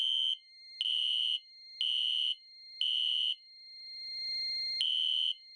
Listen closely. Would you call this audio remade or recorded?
recorded